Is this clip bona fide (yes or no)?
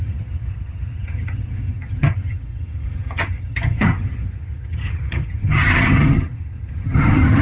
no